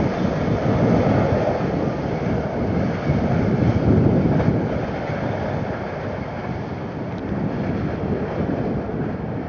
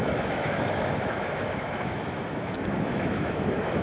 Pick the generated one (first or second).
second